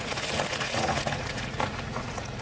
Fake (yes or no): yes